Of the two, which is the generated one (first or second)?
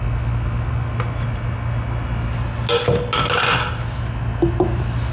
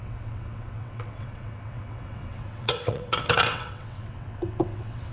second